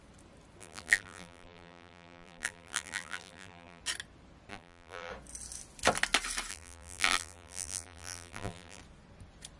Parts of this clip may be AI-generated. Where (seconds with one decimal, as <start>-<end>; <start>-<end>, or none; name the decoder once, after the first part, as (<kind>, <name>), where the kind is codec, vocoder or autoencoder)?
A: 0.6-3.8 (vocoder, BigVGAN v2); 4.5-5.1; 6.5-8.8